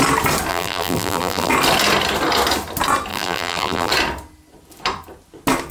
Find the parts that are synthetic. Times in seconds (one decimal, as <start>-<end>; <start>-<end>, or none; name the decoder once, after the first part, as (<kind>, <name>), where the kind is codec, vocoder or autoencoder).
0.5-1.5 (vocoder, BigVGAN v2); 3.1-3.9